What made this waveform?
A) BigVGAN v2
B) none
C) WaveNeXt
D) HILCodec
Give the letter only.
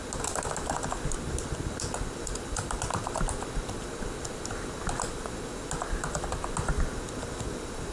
B